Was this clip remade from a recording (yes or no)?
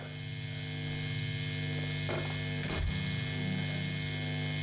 no